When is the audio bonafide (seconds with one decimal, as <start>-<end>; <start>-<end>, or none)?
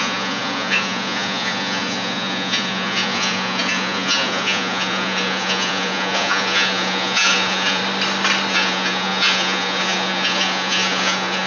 7.8-8.5